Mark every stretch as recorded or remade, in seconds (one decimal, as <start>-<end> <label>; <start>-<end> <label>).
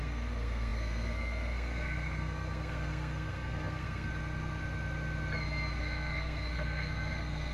0.0-4.1 remade; 4.1-5.8 recorded; 5.8-7.5 remade